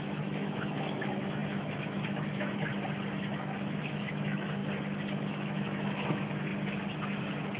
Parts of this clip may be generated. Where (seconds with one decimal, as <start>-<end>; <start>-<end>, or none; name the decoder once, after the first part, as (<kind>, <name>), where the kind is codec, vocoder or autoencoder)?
0.0-2.7 (autoencoder, DAC-VAE); 3.2-4.6; 5.3-6.5